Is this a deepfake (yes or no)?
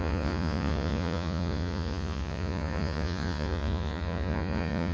yes